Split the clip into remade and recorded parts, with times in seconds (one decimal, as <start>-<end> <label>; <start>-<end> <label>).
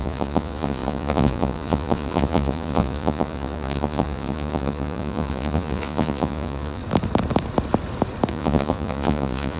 0.0-6.8 remade; 6.8-8.3 recorded; 8.3-9.6 remade